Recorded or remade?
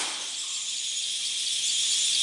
recorded